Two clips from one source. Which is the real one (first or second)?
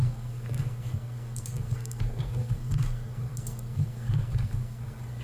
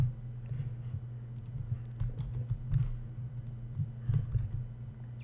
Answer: second